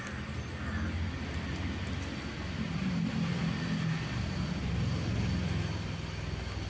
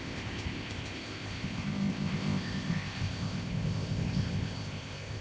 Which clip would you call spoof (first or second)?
second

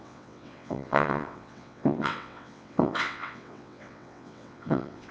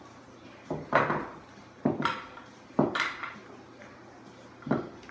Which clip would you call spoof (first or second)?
first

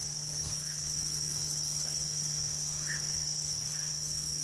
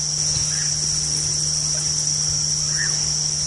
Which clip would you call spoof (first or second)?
first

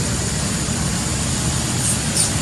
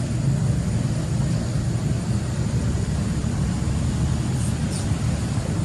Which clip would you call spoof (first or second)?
second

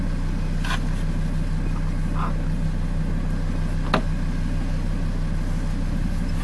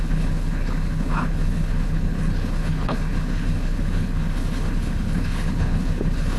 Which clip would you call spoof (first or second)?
second